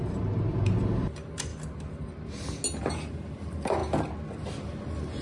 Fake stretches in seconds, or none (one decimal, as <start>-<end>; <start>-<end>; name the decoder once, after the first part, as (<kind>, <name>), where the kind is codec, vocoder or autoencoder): 0.0-1.5 (vocoder, BigVGAN v2); 2.8-3.8; 4.8-5.2